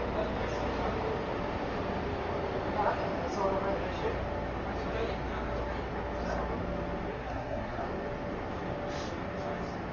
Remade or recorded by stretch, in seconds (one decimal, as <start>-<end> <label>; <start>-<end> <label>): 0.0-7.1 recorded; 7.1-7.8 remade; 7.8-9.9 recorded